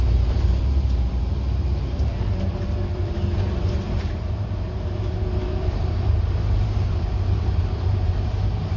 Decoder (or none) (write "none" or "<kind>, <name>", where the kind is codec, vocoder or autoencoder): vocoder, BigVGAN v2